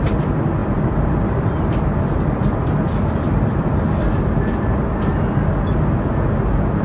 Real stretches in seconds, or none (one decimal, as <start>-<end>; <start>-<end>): 0.0-6.8